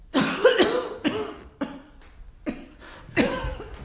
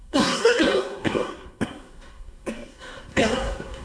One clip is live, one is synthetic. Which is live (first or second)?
first